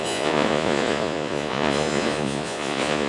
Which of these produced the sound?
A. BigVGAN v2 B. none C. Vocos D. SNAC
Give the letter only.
C